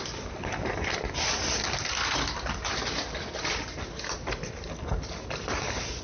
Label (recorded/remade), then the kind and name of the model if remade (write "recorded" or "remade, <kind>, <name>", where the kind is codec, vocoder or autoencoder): recorded